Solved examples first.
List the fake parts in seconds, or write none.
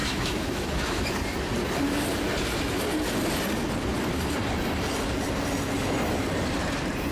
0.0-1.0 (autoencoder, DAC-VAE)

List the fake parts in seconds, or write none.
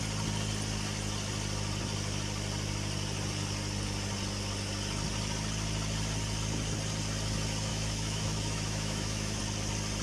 7.7-9.4 (autoencoder, DAC-VAE)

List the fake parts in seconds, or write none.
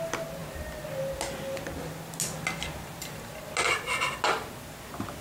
none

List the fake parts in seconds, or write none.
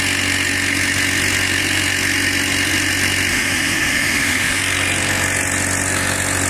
3.3-4.6 (autoencoder, DAC-VAE)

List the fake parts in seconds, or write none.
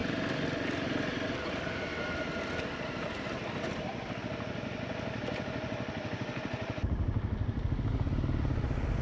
none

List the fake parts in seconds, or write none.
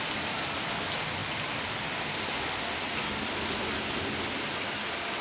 none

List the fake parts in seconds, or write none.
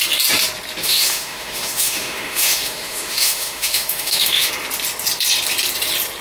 0.8-4.5 (autoencoder, DAC-VAE)